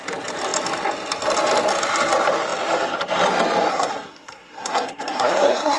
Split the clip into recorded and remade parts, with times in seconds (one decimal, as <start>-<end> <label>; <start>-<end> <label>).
0.0-3.7 recorded; 3.7-5.8 remade